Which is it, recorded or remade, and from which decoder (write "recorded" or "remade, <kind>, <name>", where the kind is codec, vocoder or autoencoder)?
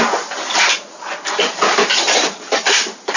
recorded